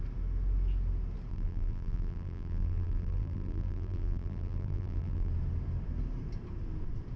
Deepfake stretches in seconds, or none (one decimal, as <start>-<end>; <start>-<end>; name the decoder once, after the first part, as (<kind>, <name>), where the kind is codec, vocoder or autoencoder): 1.3-5.3 (vocoder, BigVGAN v2)